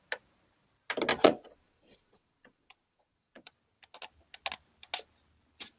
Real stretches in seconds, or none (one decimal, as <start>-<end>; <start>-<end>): 0.0-1.1; 3.5-5.8